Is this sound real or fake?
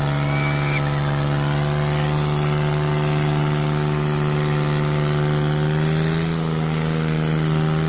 real